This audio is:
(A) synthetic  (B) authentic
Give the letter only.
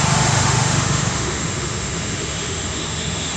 A